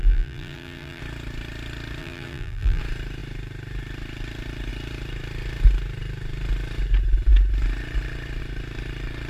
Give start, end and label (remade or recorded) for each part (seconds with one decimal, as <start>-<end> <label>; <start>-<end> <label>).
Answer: 0.0-1.0 remade; 1.0-2.0 recorded; 2.0-2.8 remade; 2.8-9.3 recorded